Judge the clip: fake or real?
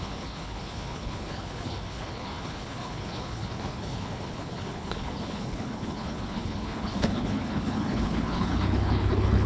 fake